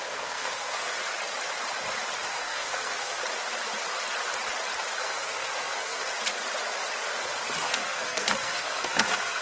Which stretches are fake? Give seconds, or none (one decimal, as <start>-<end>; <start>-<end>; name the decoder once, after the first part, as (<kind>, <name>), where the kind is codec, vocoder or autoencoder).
0.0-1.0 (codec, SNAC); 2.3-3.2; 5.0-6.1; 7.6-9.4